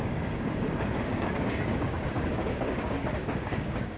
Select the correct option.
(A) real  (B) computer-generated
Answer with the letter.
B